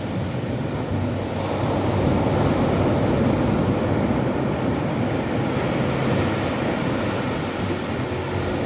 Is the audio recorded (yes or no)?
yes